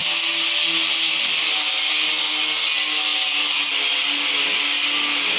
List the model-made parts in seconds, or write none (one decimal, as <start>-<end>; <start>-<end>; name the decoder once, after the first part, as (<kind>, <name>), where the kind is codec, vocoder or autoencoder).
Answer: none